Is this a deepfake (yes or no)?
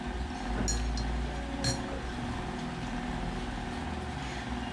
no